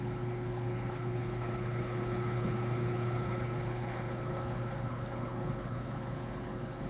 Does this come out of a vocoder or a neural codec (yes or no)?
yes